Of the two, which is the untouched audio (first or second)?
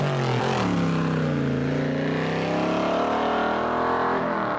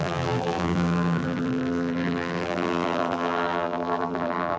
first